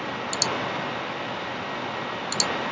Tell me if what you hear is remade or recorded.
recorded